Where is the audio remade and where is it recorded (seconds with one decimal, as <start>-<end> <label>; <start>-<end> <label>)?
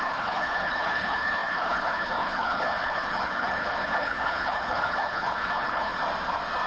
0.0-6.0 remade; 6.0-6.7 recorded